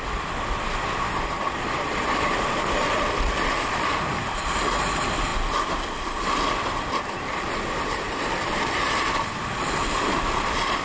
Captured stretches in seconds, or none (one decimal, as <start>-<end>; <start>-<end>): 0.0-10.8